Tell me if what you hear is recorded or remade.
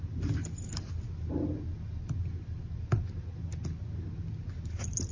recorded